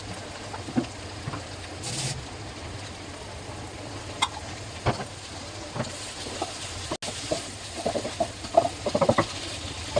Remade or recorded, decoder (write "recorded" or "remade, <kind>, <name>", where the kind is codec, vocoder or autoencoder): recorded